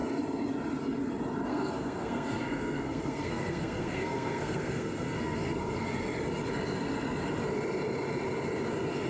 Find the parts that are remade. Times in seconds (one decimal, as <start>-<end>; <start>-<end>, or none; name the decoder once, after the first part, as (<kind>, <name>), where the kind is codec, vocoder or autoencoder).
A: 1.5-6.0 (codec, SNAC)